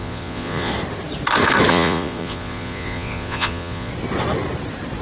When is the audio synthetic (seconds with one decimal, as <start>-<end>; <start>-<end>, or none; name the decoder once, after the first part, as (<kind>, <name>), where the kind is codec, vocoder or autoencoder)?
0.0-0.7 (vocoder, Vocos); 1.7-3.9